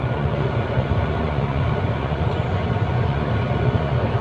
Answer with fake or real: fake